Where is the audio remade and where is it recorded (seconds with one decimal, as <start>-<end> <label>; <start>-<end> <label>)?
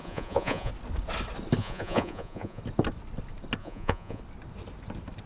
0.0-0.7 remade; 0.7-1.6 recorded; 1.6-2.6 remade; 2.6-3.6 recorded; 3.6-4.2 remade; 4.2-5.3 recorded